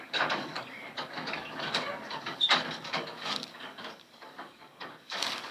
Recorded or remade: remade